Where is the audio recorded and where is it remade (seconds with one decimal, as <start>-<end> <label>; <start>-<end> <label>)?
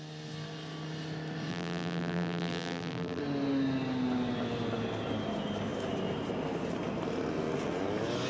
0.0-1.5 recorded; 1.5-3.2 remade; 3.2-8.3 recorded